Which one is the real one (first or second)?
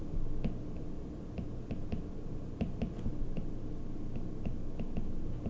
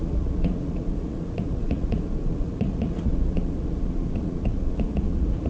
first